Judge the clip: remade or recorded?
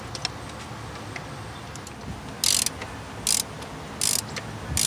recorded